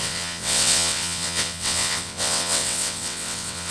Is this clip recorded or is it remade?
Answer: remade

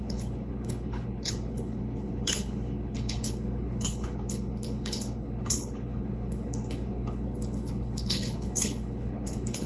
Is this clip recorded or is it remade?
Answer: remade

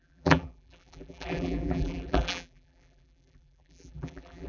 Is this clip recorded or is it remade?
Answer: remade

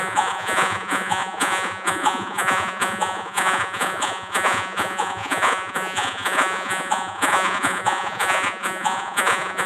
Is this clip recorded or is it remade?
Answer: remade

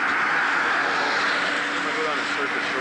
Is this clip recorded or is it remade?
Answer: recorded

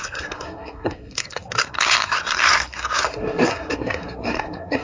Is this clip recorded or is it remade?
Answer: remade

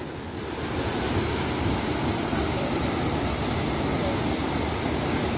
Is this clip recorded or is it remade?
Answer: recorded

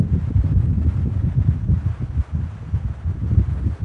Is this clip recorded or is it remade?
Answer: recorded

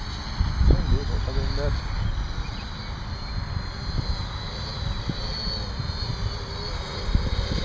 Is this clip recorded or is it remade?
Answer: recorded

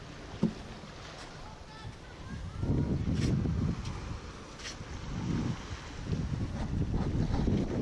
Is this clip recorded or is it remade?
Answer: recorded